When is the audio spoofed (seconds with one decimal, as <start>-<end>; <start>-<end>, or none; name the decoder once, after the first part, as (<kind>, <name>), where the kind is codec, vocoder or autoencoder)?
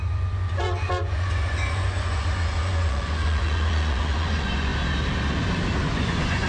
0.0-4.7 (vocoder, Vocos); 5.9-6.5